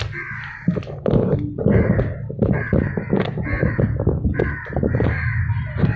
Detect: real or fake real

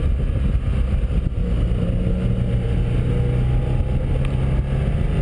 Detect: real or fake real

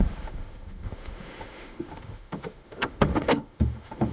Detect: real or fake fake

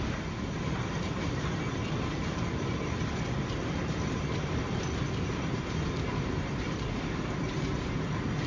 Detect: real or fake real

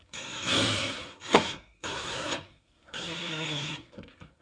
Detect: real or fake fake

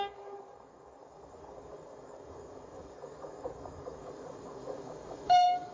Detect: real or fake fake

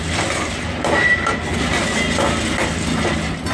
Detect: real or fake real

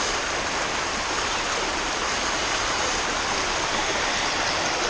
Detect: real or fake real